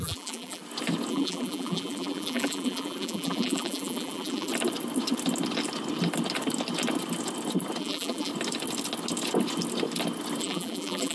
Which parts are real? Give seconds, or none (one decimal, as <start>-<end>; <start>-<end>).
0.6-1.1; 4.5-7.8; 8.3-10.4